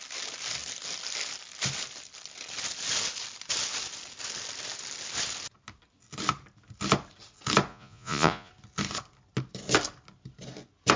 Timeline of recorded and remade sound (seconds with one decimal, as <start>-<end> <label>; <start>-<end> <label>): 0.0-7.7 recorded; 7.7-8.5 remade; 8.5-11.0 recorded